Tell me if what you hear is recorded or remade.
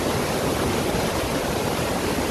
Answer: recorded